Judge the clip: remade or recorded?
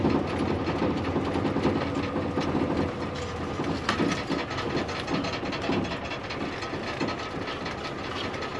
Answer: recorded